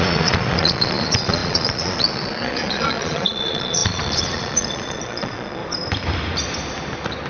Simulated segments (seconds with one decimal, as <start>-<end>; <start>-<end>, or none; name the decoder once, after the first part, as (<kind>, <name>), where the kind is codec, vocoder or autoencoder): 0.0-5.6 (vocoder, Vocos)